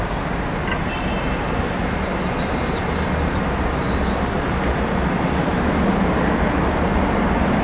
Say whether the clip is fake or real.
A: real